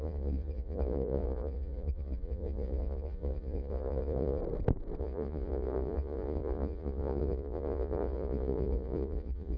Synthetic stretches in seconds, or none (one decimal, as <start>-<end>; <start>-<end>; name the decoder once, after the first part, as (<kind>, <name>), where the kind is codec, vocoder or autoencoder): 0.0-4.4 (vocoder, Vocos); 5.0-9.6